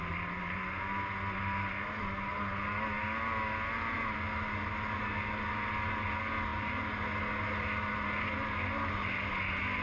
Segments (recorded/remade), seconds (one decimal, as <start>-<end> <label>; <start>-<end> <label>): 0.0-9.8 recorded